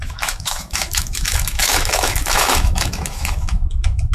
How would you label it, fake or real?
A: fake